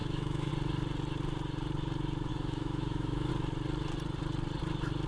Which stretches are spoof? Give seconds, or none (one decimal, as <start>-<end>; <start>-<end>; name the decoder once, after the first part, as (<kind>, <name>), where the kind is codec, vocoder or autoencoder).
0.0-0.5 (autoencoder, DAC-VAE); 2.3-3.3